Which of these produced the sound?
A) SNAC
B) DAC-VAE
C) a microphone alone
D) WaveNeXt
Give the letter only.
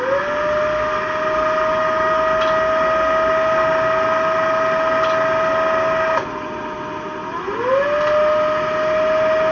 C